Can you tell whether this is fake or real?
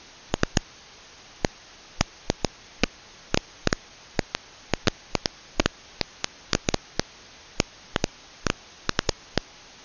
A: real